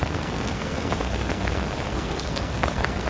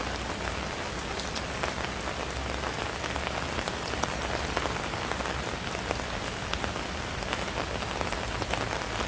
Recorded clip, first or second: second